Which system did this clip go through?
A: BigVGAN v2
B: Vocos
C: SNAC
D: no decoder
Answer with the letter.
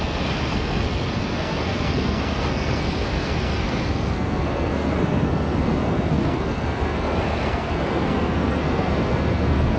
C